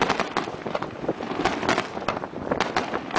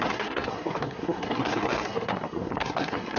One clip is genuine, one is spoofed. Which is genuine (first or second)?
first